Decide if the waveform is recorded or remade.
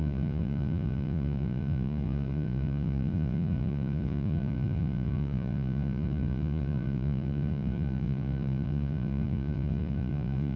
remade